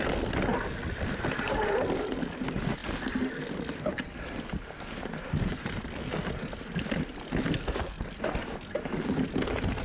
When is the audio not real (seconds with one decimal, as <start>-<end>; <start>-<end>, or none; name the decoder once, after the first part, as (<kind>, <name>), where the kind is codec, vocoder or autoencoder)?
none